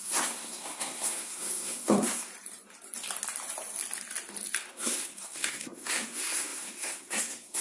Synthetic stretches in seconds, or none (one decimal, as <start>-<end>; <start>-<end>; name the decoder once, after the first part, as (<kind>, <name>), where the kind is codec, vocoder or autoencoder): 0.0-2.3 (codec, SNAC); 4.7-7.6